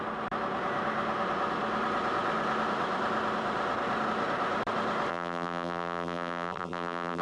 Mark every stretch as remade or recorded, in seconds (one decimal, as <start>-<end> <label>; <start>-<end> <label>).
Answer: 0.0-5.1 recorded; 5.1-7.2 remade